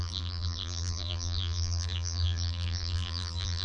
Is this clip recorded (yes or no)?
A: no